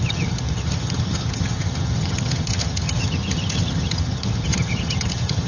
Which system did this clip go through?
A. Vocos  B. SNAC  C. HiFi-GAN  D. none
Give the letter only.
C